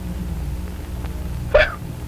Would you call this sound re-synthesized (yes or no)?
no